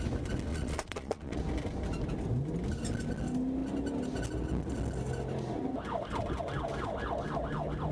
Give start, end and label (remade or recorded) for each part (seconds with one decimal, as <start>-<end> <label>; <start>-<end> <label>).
0.0-0.5 recorded; 0.5-1.4 remade; 1.4-7.9 recorded